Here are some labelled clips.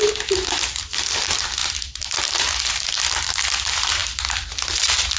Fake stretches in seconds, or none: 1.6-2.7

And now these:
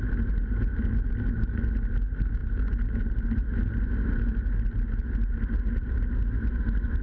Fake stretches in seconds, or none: none